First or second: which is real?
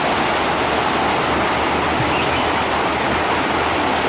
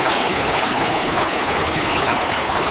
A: first